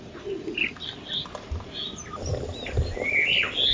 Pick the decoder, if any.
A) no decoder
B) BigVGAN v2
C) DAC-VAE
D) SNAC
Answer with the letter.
A